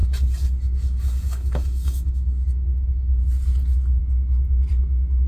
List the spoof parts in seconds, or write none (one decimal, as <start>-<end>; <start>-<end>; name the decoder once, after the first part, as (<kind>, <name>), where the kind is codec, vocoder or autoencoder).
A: 0.0-3.2 (codec, DAC)